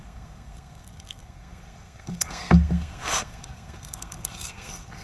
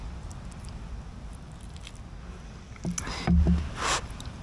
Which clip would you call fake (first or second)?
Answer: first